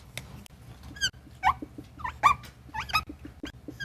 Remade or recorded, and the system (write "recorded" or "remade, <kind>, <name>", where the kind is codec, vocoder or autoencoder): recorded